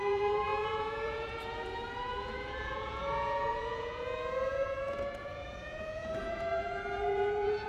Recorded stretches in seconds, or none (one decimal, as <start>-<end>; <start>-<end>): none